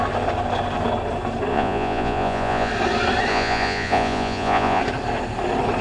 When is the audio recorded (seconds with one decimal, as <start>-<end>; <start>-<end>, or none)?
0.0-1.5; 2.7-3.3; 4.8-5.8